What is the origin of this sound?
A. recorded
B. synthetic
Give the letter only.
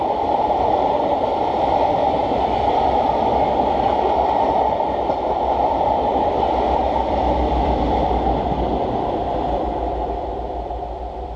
B